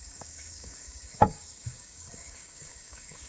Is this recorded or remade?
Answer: remade